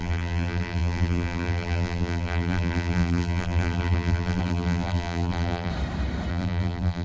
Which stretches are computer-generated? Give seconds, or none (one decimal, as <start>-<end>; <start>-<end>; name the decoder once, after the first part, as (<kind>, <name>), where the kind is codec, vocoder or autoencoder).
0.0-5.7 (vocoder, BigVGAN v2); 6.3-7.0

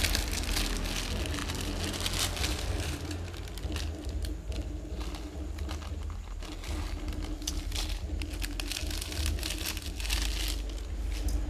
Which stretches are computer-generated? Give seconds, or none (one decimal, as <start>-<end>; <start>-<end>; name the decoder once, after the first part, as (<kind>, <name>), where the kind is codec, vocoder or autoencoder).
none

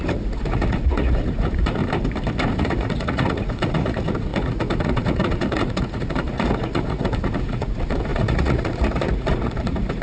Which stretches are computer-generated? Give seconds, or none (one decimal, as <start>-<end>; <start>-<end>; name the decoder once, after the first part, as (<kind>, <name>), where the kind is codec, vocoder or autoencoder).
0.0-1.8 (vocoder, Vocos); 2.4-10.0

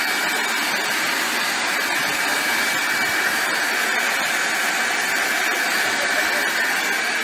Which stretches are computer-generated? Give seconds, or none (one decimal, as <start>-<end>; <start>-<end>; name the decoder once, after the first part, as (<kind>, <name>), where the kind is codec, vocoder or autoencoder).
none

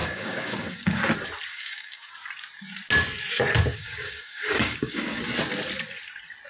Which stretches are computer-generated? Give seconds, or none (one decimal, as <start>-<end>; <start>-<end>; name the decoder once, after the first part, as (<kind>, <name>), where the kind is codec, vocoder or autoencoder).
0.0-1.0 (codec, DAC); 1.5-2.1; 3.7-5.2

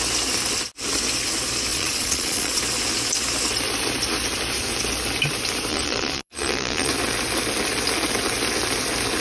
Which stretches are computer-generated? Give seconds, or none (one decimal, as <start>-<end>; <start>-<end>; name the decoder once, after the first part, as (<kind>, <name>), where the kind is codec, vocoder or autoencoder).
1.7-2.6 (vocoder, Vocos); 5.7-6.9